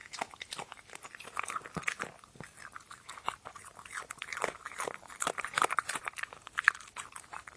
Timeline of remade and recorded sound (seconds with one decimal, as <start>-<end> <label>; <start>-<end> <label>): 0.0-4.3 recorded; 4.3-6.5 remade; 6.5-7.6 recorded